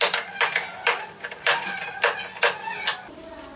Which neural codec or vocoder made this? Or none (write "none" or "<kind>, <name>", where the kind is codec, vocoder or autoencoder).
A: none